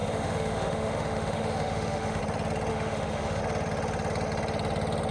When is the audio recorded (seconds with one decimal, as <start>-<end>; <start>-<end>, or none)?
2.2-2.7; 3.4-5.1